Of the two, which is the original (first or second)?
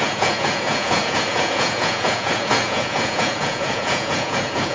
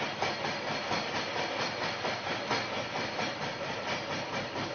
second